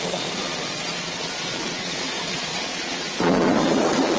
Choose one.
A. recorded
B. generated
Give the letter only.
B